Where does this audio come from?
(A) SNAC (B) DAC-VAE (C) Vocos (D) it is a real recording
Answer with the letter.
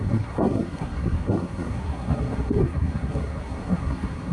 A